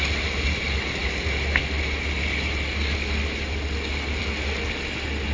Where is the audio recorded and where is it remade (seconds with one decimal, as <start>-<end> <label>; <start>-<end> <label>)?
0.0-5.3 recorded